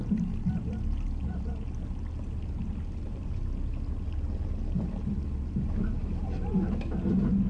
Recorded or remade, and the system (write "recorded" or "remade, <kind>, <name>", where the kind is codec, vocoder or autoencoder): recorded